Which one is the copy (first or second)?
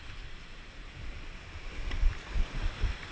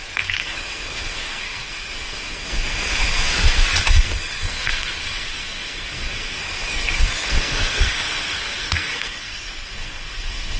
second